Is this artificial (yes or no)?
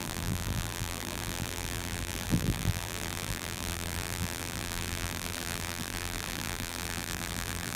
yes